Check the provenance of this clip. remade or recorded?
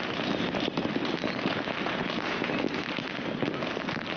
recorded